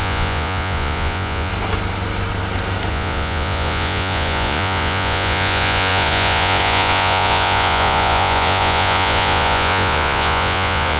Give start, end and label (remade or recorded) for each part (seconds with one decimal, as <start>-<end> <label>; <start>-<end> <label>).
0.0-1.5 remade; 1.5-2.9 recorded; 2.9-11.0 remade